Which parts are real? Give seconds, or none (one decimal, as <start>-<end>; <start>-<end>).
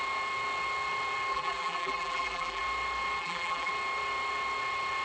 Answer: 0.0-1.3; 2.6-3.2; 3.7-5.0